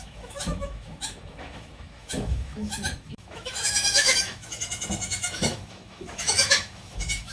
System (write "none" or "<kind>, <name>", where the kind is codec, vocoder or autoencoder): autoencoder, DAC-VAE